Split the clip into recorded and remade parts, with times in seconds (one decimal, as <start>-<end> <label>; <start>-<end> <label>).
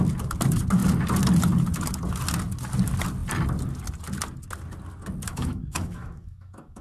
0.0-5.3 recorded; 5.3-6.8 remade